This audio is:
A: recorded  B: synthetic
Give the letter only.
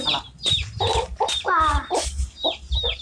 A